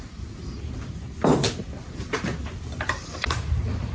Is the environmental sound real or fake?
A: real